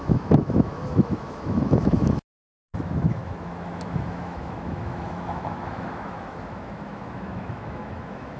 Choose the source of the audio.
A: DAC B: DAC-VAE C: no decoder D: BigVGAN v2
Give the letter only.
B